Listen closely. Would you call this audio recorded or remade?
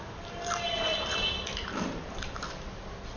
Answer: recorded